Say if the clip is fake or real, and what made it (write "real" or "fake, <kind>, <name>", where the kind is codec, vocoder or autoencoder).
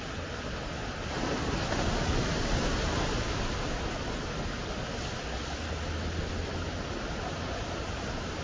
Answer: real